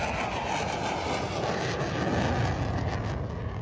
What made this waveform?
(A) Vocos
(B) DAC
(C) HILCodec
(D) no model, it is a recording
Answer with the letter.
D